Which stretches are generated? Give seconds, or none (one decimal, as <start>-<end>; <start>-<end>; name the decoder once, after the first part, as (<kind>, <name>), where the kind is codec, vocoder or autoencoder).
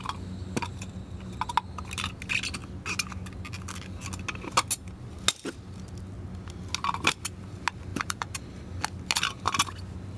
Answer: 7.9-8.6 (vocoder, BigVGAN v2)